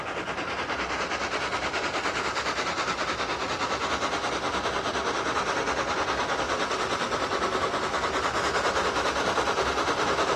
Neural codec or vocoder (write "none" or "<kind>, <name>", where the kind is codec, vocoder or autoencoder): none